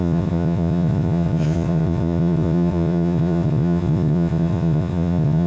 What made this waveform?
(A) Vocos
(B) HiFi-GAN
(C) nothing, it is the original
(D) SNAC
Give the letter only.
A